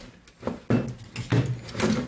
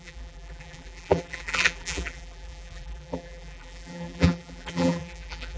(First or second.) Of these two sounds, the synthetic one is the second